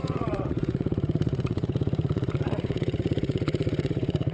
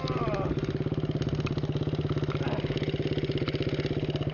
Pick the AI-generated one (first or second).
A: first